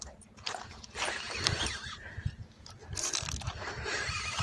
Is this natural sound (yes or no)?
no